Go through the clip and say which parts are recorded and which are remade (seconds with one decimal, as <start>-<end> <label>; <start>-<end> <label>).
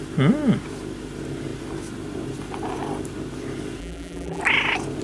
0.0-3.8 recorded; 3.8-4.4 remade; 4.4-5.0 recorded